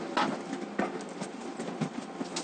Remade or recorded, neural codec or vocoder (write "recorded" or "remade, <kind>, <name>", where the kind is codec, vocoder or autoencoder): recorded